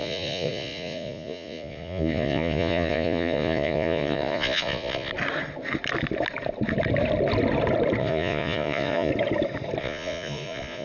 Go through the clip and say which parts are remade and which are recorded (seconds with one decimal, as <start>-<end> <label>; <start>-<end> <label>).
0.0-5.1 remade; 5.1-8.0 recorded; 8.0-9.1 remade; 9.1-9.8 recorded; 9.8-10.8 remade